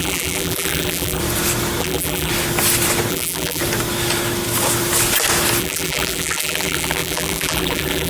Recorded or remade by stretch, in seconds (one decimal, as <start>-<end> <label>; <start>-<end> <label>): 0.0-1.2 remade; 1.2-1.8 recorded; 1.8-2.3 remade; 2.3-3.1 recorded; 3.1-3.6 remade; 3.6-5.6 recorded; 5.6-8.1 remade